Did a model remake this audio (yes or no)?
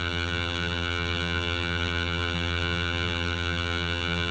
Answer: yes